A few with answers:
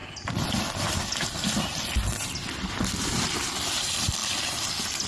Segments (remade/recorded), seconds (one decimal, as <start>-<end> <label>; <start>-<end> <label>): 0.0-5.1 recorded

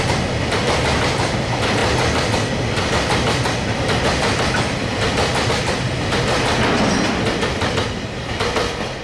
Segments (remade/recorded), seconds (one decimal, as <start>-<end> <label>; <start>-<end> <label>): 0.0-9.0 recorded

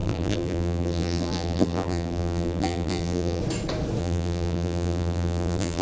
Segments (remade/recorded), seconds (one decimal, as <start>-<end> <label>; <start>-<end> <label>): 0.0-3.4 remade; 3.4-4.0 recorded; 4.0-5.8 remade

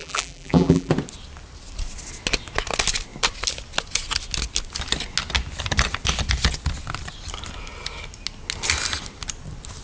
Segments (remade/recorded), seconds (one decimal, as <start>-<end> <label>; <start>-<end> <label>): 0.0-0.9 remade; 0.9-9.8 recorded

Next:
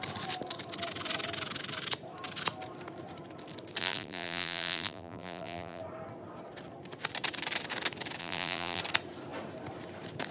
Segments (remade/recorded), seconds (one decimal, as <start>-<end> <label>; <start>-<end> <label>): 0.0-3.8 recorded; 3.8-5.8 remade; 5.8-8.2 recorded; 8.2-8.8 remade; 8.8-10.3 recorded

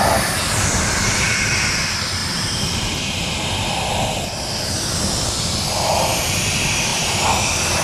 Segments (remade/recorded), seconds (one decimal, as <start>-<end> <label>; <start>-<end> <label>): 0.0-2.2 recorded; 2.2-3.5 remade; 3.5-6.9 recorded; 6.9-7.8 remade